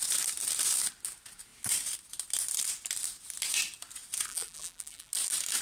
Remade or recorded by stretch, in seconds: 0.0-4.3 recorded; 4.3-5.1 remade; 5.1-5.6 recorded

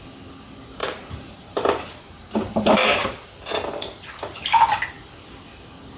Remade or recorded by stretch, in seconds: 0.0-0.8 recorded; 0.8-4.4 remade; 4.4-6.0 recorded

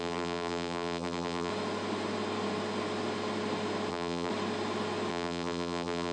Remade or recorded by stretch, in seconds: 0.0-1.5 remade; 1.5-3.9 recorded; 3.9-4.3 remade; 4.3-5.1 recorded; 5.1-6.1 remade

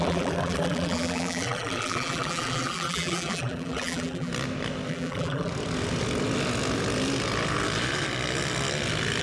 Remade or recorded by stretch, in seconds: 0.0-4.3 remade; 4.3-4.9 recorded; 4.9-5.5 remade; 5.5-9.2 recorded